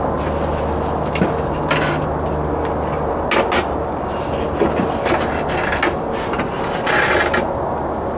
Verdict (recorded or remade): recorded